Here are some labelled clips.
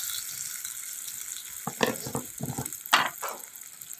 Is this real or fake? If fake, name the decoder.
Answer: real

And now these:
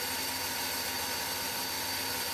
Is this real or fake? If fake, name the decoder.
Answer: real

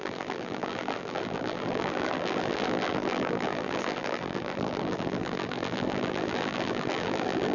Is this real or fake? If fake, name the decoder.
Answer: fake, vocoder, BigVGAN v2